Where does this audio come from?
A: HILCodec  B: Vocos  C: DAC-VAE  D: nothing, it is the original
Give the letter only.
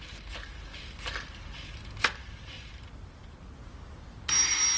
D